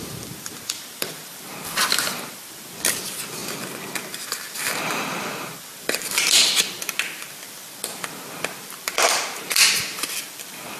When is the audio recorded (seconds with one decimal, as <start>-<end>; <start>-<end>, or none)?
none